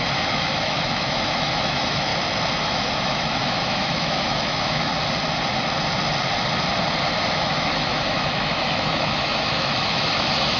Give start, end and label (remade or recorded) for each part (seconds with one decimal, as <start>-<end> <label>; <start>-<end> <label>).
0.0-2.1 remade; 2.1-2.6 recorded; 2.6-4.9 remade; 4.9-7.3 recorded; 7.3-10.6 remade